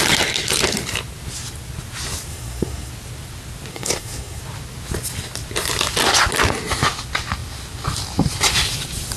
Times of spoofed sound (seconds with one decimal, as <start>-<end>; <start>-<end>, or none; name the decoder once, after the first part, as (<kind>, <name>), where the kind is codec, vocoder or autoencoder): 2.3-2.9 (codec, SNAC); 3.7-4.4